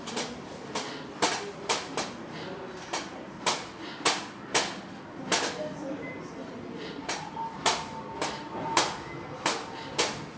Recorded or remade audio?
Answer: recorded